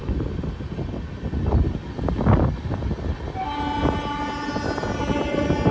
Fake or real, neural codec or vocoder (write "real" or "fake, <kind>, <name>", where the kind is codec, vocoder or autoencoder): real